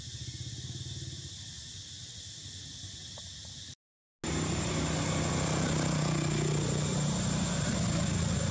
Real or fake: real